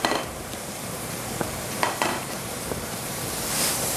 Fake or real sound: fake